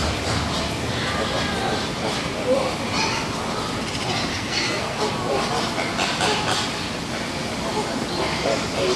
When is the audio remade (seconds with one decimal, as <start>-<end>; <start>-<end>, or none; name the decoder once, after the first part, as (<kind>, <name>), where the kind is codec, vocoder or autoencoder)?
4.3-5.1 (codec, SNAC)